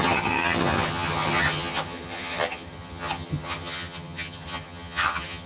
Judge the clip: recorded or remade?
remade